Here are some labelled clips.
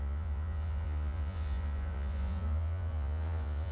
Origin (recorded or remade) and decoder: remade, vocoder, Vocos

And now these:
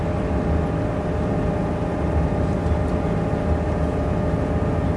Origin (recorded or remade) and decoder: recorded